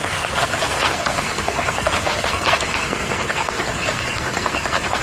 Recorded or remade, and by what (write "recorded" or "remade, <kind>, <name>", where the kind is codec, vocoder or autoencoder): remade, codec, SNAC